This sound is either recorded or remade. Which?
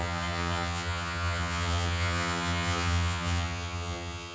remade